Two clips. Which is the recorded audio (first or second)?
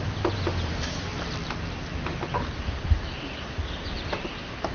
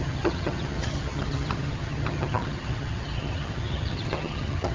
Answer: first